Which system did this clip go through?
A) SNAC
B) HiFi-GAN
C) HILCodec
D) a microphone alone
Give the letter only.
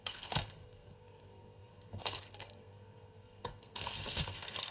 A